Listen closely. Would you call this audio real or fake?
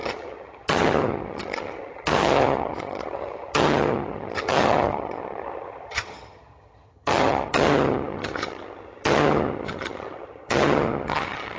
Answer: fake